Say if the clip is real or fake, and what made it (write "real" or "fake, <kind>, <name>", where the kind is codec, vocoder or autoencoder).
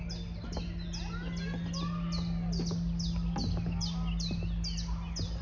real